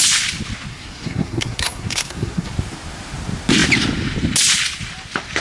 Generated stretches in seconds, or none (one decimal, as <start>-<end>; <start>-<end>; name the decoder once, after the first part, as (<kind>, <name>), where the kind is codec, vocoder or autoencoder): 0.7-2.5 (codec, SNAC)

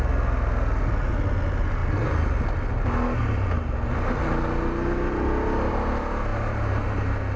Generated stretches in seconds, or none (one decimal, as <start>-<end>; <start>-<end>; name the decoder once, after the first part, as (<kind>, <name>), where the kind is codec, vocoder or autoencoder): none

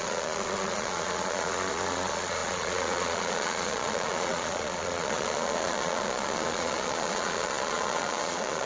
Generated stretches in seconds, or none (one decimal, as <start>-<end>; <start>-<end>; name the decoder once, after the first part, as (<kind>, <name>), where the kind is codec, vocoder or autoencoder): 0.0-8.7 (vocoder, Vocos)

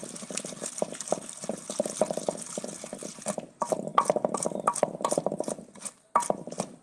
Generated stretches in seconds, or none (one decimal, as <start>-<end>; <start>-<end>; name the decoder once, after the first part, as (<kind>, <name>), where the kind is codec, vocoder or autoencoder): none

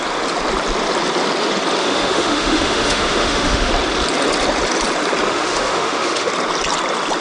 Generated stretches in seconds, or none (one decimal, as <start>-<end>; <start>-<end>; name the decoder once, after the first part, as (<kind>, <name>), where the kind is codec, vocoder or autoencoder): 1.8-3.7 (autoencoder, DAC-VAE); 5.3-6.3

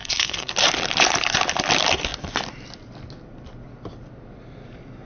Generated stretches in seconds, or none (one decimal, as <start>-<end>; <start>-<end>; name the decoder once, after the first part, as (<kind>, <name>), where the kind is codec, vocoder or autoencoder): 0.0-0.5 (codec, SNAC)

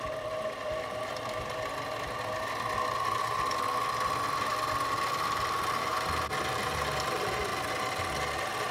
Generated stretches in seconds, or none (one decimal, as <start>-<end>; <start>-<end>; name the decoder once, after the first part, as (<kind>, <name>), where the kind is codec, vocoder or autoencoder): 0.0-1.1 (vocoder, BigVGAN v2); 5.1-5.9; 6.4-7.5